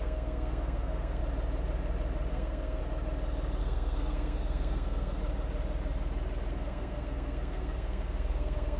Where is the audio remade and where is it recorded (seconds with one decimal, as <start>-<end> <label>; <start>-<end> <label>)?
0.0-1.2 remade; 1.2-2.3 recorded; 2.3-2.8 remade; 2.8-3.6 recorded; 3.6-5.2 remade; 5.2-6.5 recorded; 6.5-8.8 remade